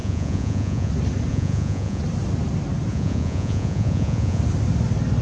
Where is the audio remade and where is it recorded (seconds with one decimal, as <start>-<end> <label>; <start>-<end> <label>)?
0.0-0.9 remade; 0.9-1.3 recorded; 1.3-2.0 remade; 2.0-2.9 recorded; 2.9-4.4 remade; 4.4-5.2 recorded